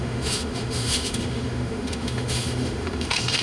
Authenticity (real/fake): fake